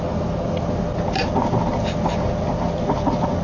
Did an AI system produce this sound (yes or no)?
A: no